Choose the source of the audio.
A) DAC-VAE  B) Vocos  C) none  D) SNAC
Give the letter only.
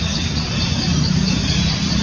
C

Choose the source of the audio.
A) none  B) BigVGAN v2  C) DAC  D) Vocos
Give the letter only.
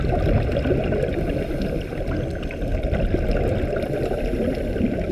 A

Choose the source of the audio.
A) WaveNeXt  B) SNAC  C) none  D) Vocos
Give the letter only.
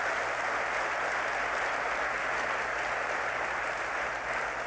C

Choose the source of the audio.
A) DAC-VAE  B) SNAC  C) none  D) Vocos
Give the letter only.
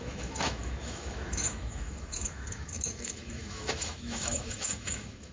A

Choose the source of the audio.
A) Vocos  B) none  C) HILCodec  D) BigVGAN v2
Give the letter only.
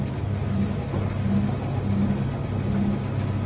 B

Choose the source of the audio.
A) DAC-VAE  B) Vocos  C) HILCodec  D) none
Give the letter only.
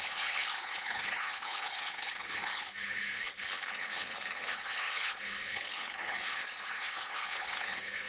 C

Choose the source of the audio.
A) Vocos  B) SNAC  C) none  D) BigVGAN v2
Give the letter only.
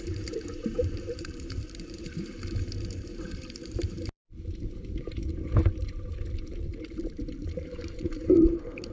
D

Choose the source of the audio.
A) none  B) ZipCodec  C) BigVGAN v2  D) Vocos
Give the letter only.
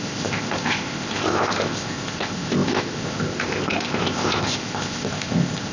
B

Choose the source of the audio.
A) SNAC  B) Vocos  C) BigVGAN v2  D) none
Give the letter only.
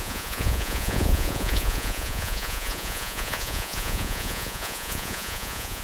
B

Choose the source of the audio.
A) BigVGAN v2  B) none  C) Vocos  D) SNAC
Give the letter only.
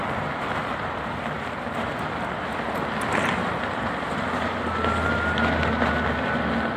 B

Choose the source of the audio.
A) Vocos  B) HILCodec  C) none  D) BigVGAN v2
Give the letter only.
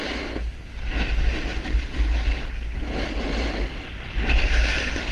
C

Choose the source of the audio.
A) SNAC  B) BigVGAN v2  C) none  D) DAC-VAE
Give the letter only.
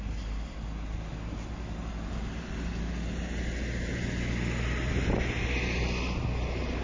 C